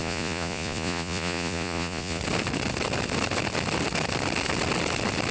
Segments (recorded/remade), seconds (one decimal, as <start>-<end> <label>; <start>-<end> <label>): 0.0-2.2 remade; 2.2-5.3 recorded